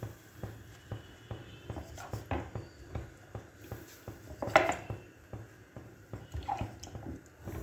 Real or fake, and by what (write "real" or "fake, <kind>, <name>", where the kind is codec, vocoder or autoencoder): real